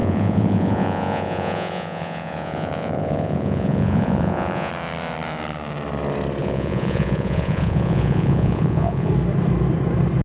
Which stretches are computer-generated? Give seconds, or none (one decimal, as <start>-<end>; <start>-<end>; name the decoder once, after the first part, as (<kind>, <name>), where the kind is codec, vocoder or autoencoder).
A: 0.0-4.7 (vocoder, Vocos); 6.4-9.1